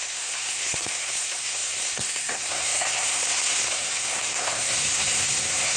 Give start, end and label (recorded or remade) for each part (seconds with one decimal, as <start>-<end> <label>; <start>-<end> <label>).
0.0-5.8 remade